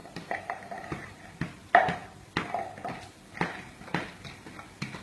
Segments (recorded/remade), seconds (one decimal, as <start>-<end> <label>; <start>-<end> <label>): 0.0-1.2 remade; 1.2-5.0 recorded